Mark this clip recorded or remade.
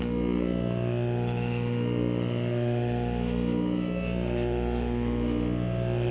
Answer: remade